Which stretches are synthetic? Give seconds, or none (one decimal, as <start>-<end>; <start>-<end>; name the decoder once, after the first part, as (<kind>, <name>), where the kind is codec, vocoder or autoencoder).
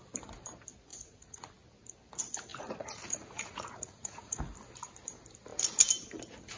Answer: 0.9-1.5 (vocoder, Vocos); 2.5-4.4